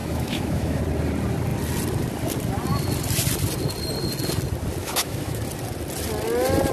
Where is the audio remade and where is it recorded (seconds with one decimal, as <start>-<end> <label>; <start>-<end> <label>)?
0.0-0.8 remade; 0.8-4.8 recorded; 4.8-5.4 remade; 5.4-6.7 recorded